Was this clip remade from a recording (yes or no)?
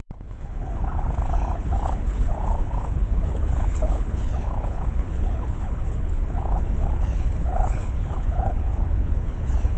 yes